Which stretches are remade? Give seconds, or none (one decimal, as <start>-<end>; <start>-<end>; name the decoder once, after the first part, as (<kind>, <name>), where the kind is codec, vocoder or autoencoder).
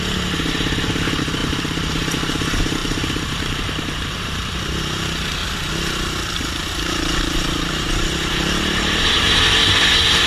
0.0-5.4 (vocoder, BigVGAN v2); 8.6-10.3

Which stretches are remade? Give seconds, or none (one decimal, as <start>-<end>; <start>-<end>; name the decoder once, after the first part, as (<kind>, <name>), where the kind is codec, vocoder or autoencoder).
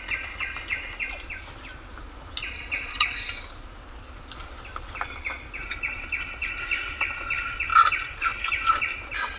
none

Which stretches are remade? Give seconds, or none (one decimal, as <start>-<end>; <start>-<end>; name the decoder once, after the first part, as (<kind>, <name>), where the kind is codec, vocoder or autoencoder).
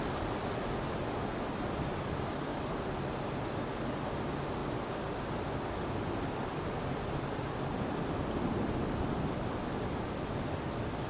none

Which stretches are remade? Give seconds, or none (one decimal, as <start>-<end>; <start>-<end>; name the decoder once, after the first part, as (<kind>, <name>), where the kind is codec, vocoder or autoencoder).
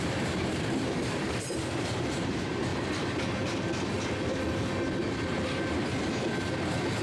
0.0-2.7 (vocoder, BigVGAN v2)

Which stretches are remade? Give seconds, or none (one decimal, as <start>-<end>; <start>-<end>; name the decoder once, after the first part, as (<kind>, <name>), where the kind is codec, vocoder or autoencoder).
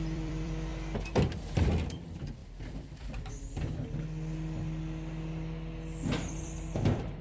0.0-0.7 (vocoder, BigVGAN v2); 1.3-2.4; 6.4-7.2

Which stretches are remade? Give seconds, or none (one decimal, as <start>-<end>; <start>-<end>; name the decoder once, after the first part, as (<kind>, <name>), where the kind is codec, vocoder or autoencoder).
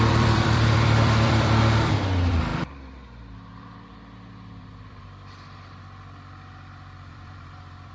0.0-7.9 (vocoder, BigVGAN v2)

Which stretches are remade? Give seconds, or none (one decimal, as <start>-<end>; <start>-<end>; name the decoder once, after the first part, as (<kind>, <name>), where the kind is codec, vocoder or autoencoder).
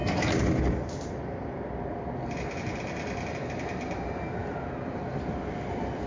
none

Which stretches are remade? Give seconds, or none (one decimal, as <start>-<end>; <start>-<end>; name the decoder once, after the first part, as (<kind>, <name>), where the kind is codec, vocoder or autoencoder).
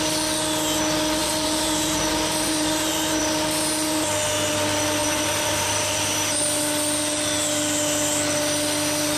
1.2-3.2 (vocoder, BigVGAN v2); 5.0-6.0